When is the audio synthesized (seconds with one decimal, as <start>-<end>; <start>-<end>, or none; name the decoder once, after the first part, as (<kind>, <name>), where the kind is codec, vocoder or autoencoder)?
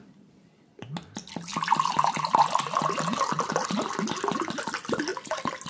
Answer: none